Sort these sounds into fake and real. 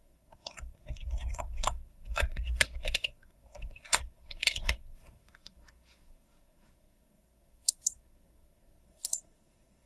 fake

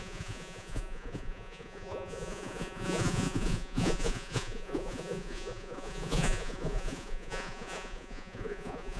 fake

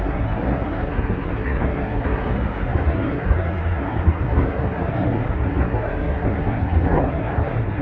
fake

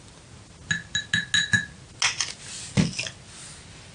real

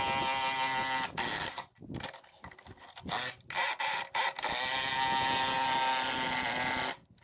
real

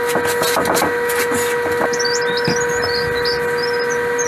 real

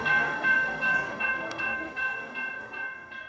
fake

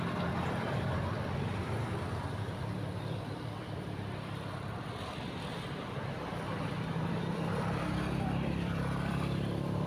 fake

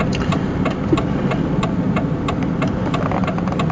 real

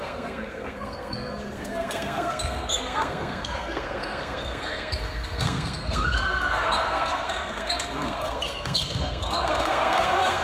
fake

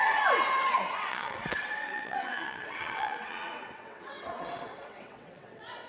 fake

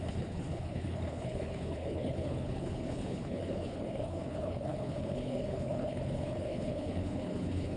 fake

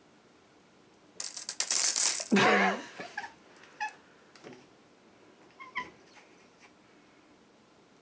real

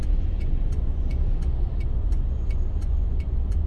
fake